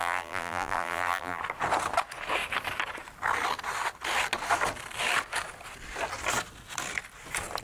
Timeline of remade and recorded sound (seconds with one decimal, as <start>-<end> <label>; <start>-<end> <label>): 0.0-1.4 remade; 1.4-7.6 recorded